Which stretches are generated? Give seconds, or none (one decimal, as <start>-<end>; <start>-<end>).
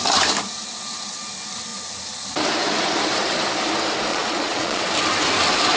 4.1-4.8